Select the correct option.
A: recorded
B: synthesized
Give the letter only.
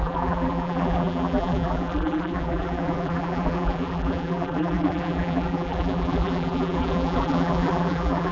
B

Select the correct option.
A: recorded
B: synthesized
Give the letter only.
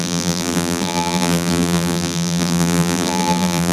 B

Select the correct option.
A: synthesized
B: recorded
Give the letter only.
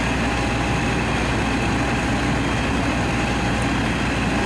B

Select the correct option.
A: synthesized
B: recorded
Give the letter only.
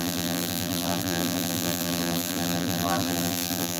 A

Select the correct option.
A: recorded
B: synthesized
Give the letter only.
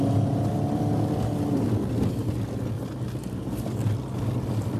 A